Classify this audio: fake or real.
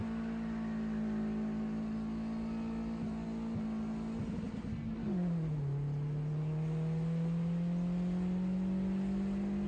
real